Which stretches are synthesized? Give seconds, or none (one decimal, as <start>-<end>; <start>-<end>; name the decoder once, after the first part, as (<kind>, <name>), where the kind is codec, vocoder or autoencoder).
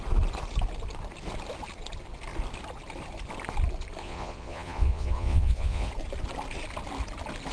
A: 4.0-5.9 (vocoder, Vocos)